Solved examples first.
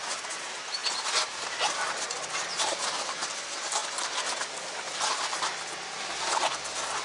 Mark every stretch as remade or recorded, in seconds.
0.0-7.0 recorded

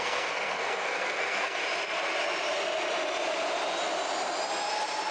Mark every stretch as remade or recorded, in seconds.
0.0-1.6 remade; 1.6-5.1 recorded

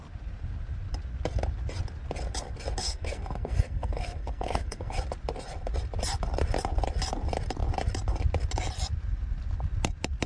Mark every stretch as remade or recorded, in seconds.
0.0-2.8 recorded; 2.8-5.0 remade; 5.0-10.3 recorded

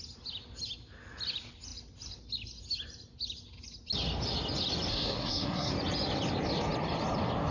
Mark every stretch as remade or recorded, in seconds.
0.0-4.9 recorded; 4.9-5.7 remade; 5.7-7.5 recorded